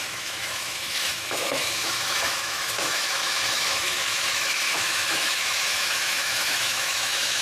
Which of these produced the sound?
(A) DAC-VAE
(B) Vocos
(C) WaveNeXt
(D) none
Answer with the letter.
A